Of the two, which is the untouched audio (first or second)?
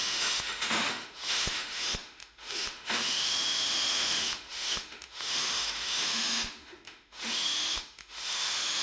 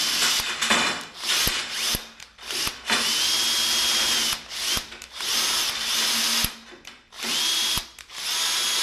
second